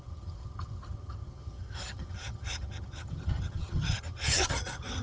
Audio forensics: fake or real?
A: fake